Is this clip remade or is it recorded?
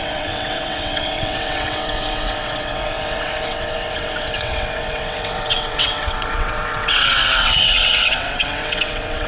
remade